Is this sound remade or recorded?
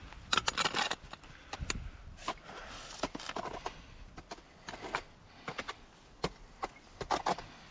recorded